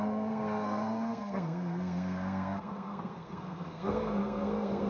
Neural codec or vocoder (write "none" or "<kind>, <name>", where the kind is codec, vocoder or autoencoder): codec, SNAC